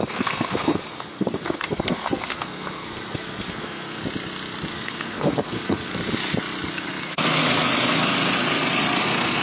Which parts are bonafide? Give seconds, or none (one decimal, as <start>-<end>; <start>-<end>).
4.0-4.7; 5.9-6.7; 7.4-9.0